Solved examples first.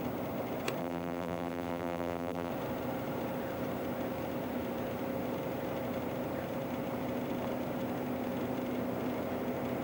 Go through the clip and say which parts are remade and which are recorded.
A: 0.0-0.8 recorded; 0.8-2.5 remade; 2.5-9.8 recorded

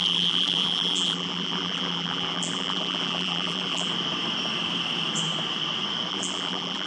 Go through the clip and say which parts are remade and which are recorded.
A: 0.0-3.9 remade; 3.9-6.1 recorded; 6.1-6.9 remade

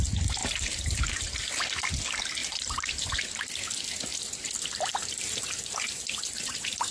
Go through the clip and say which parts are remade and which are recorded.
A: 0.0-0.4 recorded; 0.4-1.5 remade; 1.5-2.4 recorded; 2.4-3.4 remade; 3.4-4.9 recorded; 4.9-6.9 remade

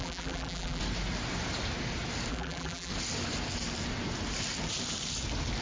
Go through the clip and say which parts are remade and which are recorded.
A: 0.0-0.8 remade; 0.8-2.3 recorded; 2.3-2.9 remade; 2.9-5.6 recorded